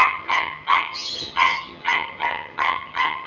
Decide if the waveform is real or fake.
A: fake